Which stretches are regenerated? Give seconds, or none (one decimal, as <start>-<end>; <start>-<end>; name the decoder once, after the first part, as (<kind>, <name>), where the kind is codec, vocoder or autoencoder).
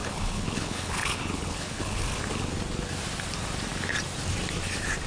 0.0-2.0 (codec, HILCodec)